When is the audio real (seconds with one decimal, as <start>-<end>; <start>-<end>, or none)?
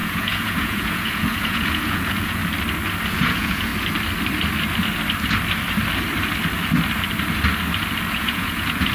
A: 2.4-3.1; 3.7-8.2